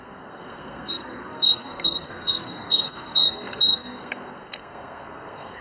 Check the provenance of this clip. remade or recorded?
remade